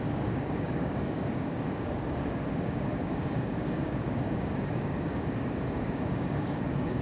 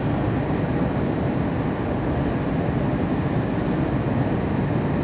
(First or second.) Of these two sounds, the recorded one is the second